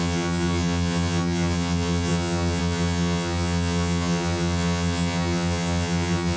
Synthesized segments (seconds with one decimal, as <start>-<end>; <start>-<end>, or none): 0.0-6.4